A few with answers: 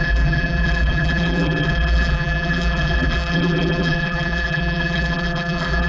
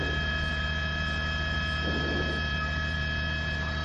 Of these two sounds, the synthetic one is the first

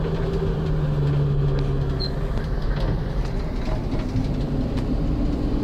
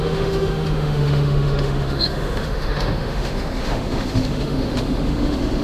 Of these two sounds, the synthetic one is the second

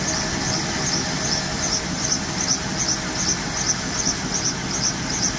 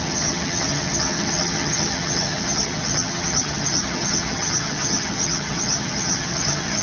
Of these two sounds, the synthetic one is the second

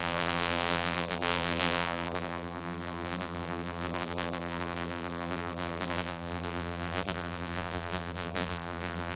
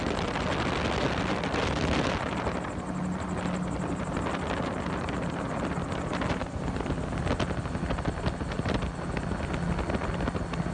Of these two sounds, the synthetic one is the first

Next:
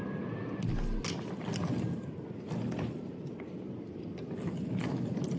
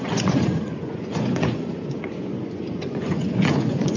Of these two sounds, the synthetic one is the second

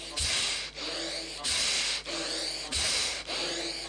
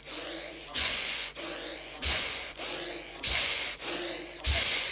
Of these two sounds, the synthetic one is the second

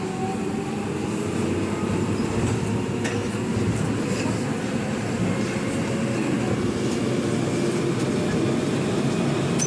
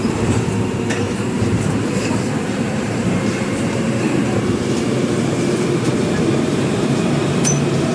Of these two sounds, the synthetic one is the second